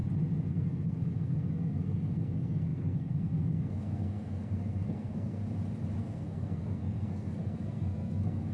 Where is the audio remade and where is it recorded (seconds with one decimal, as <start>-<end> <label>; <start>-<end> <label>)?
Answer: 0.0-0.5 recorded; 0.5-5.4 remade; 5.4-6.0 recorded; 6.0-8.5 remade